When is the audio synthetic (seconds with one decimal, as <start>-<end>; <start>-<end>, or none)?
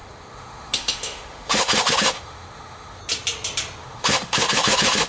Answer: 0.0-3.0; 3.8-5.1